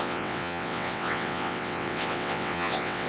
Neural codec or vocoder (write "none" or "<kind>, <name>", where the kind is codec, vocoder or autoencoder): vocoder, WaveNeXt